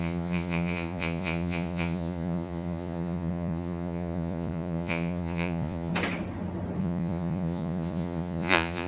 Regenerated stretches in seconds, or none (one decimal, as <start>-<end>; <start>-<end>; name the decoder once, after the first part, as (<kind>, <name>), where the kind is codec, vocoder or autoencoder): 0.0-5.9 (vocoder, Vocos); 6.8-8.9